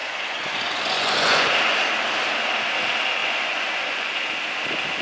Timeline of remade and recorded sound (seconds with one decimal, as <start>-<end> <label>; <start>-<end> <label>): 0.0-1.5 remade; 1.5-3.2 recorded; 3.2-4.1 remade; 4.1-5.0 recorded